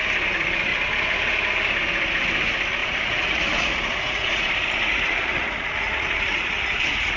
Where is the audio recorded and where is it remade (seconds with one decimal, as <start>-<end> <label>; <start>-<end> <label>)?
0.0-2.8 recorded; 2.8-7.2 remade